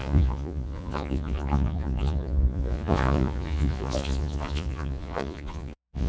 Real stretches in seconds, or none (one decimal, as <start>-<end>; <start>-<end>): none